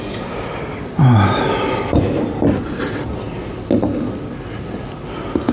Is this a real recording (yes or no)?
yes